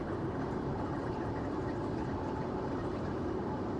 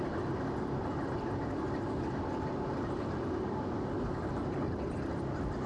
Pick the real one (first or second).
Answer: second